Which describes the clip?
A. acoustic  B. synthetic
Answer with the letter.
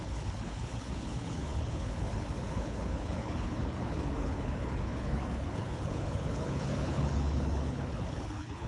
B